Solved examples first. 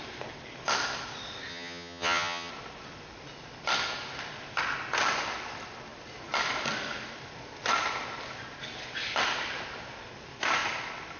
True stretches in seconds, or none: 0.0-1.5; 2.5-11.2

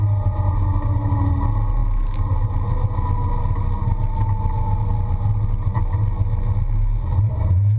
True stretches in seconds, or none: 0.0-7.8

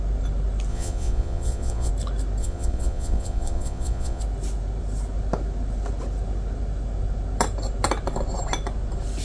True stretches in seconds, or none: 0.0-0.7; 1.9-2.4; 4.2-9.2

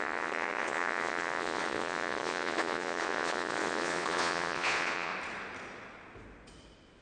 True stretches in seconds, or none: 5.1-7.0